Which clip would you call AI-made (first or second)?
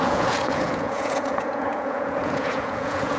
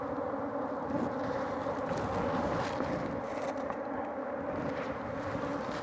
first